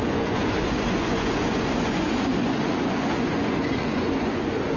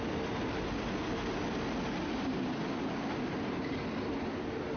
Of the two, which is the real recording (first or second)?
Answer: second